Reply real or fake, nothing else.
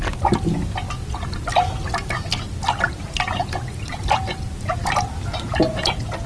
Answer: real